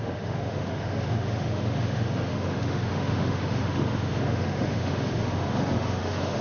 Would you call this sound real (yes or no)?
no